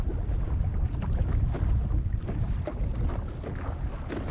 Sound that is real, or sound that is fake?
real